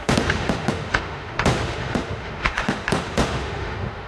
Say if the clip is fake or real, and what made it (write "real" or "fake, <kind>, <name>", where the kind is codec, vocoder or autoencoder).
fake, autoencoder, DAC-VAE